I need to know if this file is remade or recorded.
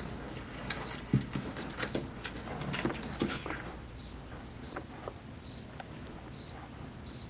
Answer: recorded